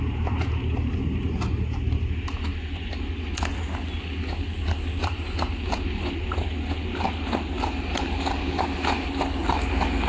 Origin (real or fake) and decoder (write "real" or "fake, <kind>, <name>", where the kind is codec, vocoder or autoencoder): real